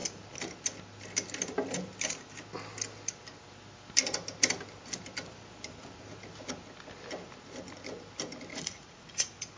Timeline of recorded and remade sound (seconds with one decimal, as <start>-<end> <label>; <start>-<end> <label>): 0.0-8.5 recorded; 8.5-9.6 remade